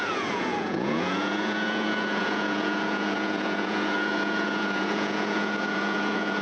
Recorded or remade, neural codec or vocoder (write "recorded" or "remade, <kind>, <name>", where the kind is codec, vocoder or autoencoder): remade, vocoder, Vocos